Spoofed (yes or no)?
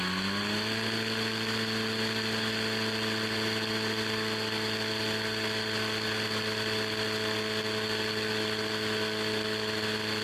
no